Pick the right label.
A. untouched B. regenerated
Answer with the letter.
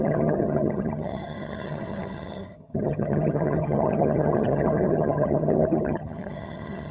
B